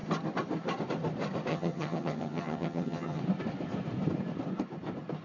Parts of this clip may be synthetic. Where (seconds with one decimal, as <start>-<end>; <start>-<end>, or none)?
1.5-3.2